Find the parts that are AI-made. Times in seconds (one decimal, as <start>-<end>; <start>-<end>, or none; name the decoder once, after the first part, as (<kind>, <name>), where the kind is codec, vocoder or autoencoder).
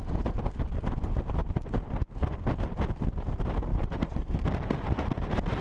0.0-0.8 (vocoder, BigVGAN v2); 1.4-1.9; 3.7-5.6